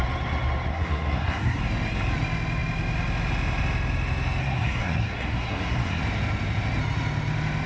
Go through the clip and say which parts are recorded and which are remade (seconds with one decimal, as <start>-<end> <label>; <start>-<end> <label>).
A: 0.0-0.7 recorded; 0.7-1.6 remade; 1.6-4.4 recorded; 4.4-6.0 remade; 6.0-7.7 recorded